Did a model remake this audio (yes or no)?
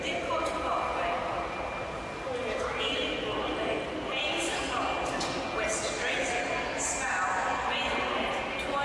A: no